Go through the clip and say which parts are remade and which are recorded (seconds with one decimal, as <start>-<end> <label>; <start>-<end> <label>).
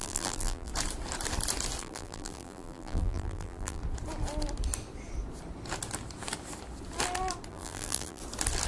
0.0-0.7 remade; 0.7-1.8 recorded; 1.8-3.8 remade; 3.8-7.5 recorded; 7.5-8.2 remade; 8.2-8.7 recorded